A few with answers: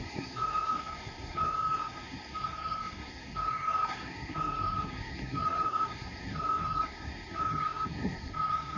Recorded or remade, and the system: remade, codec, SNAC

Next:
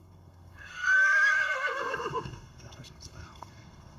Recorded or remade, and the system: remade, codec, SNAC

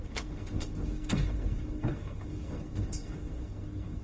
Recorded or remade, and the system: remade, codec, SNAC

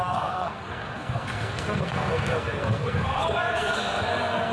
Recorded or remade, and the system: remade, codec, SNAC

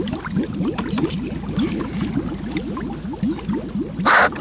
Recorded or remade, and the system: recorded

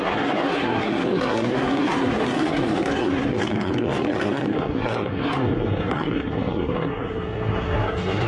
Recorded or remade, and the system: remade, codec, SNAC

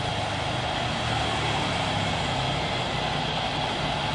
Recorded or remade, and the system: recorded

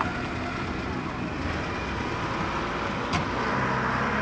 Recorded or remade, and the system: recorded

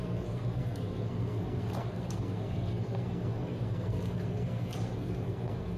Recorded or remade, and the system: remade, codec, SNAC